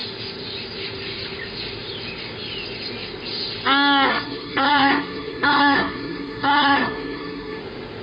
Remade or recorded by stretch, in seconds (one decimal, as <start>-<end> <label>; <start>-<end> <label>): 0.0-4.1 recorded; 4.1-7.6 remade; 7.6-8.0 recorded